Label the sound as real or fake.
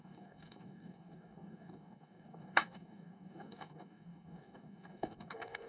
fake